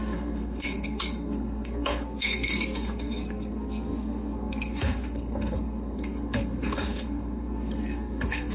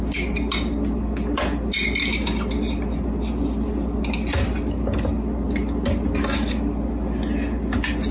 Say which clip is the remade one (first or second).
first